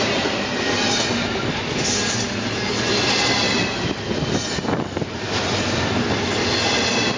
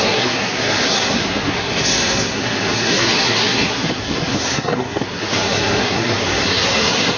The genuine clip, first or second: first